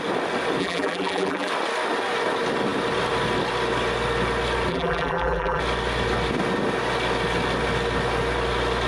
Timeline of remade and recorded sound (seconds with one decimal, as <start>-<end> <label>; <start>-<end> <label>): 0.0-0.6 recorded; 0.6-1.5 remade; 1.5-4.7 recorded; 4.7-5.6 remade; 5.6-8.9 recorded